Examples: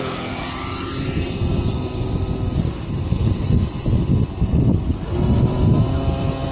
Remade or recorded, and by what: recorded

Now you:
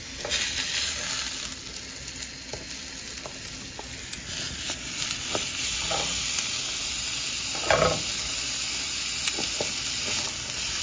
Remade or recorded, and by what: recorded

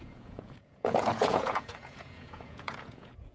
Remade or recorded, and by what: remade, vocoder, Vocos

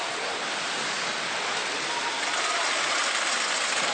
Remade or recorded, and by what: recorded